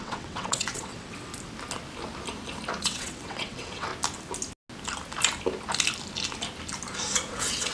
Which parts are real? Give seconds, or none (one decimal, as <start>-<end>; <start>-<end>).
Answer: 1.3-2.8; 3.9-7.3